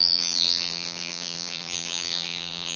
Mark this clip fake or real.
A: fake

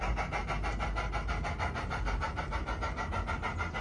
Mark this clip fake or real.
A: real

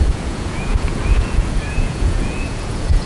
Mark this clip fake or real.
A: fake